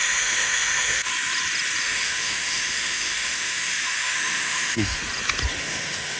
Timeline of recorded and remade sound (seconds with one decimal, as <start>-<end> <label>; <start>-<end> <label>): 0.0-1.1 remade; 1.1-1.8 recorded; 1.8-5.0 remade; 5.0-5.6 recorded; 5.6-6.2 remade

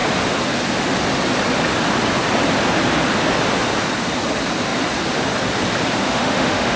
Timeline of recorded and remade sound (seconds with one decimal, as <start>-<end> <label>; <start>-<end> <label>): 0.0-6.0 recorded; 6.0-6.8 remade

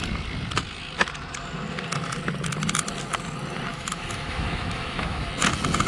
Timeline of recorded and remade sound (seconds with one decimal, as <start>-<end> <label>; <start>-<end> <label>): 0.0-3.7 recorded; 3.7-5.3 remade; 5.3-5.9 recorded

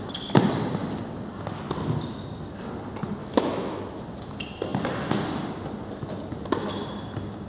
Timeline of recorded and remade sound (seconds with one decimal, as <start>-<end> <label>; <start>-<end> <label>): 0.0-3.2 recorded; 3.2-3.8 remade; 3.8-7.5 recorded

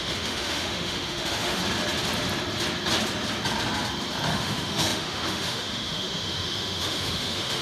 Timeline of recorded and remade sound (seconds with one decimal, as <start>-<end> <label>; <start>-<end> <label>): 0.0-1.6 remade; 1.6-4.3 recorded; 4.3-7.6 remade

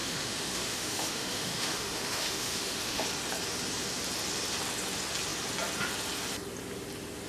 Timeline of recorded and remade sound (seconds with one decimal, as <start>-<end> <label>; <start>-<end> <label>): 0.0-3.0 remade; 3.0-7.3 recorded

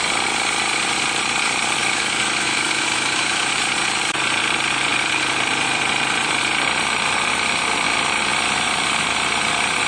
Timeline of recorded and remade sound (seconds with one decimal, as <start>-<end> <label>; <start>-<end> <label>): 0.0-1.8 recorded; 1.8-3.5 remade; 3.5-9.9 recorded

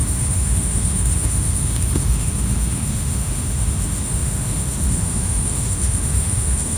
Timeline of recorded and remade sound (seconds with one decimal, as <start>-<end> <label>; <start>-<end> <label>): 0.0-6.8 remade